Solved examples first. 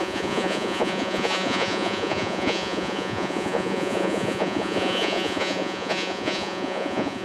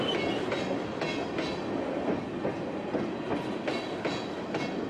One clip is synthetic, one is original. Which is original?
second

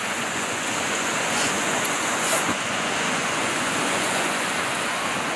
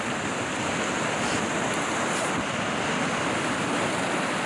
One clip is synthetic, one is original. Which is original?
second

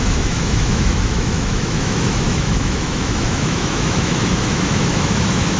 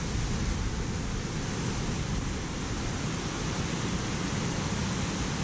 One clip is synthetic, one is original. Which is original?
second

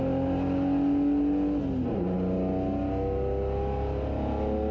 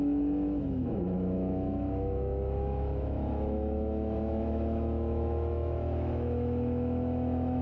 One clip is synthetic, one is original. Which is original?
first